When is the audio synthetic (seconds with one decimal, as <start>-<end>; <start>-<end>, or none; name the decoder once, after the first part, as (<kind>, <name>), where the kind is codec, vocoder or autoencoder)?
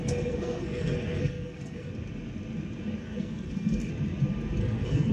0.0-1.9 (codec, SNAC); 3.0-3.9; 4.6-5.1